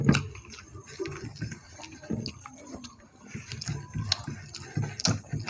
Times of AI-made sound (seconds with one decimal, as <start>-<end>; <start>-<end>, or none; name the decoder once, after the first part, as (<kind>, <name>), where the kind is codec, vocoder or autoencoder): none